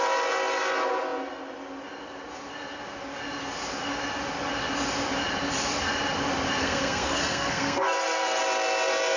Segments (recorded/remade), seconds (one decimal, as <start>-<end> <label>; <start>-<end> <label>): 0.0-6.6 recorded; 6.6-8.4 remade; 8.4-9.2 recorded